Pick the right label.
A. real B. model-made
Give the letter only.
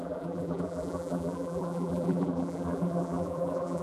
B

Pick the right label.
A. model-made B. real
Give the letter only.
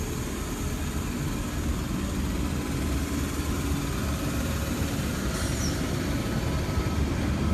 B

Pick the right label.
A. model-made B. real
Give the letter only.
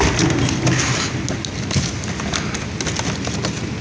B